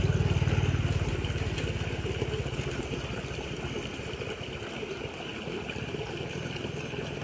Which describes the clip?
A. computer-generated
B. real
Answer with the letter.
B